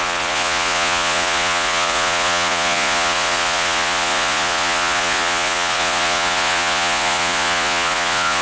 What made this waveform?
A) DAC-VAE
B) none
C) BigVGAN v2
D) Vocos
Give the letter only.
D